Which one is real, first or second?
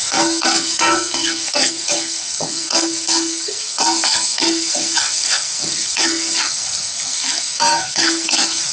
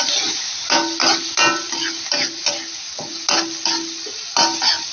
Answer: second